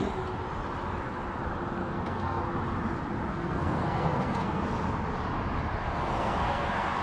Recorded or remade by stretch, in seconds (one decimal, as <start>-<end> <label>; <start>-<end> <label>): 0.0-1.8 recorded; 1.8-2.4 remade; 2.4-3.3 recorded; 3.3-4.6 remade; 4.6-5.8 recorded; 5.8-7.0 remade